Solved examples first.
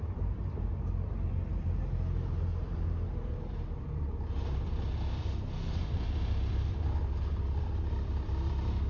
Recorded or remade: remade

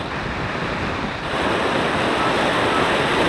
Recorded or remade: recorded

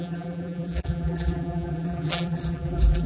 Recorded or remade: remade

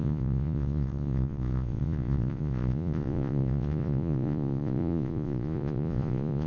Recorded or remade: remade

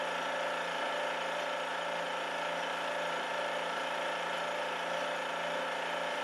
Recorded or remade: recorded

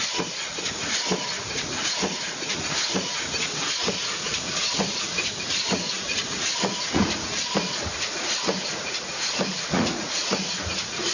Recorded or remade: remade